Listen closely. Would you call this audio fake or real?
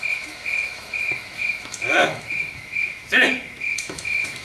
fake